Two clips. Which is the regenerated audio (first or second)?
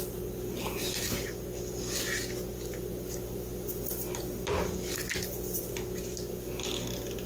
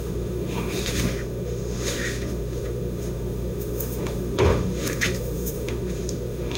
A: second